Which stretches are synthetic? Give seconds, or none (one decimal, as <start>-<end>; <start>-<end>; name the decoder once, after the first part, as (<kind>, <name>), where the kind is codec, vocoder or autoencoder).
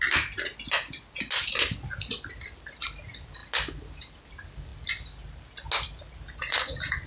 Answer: none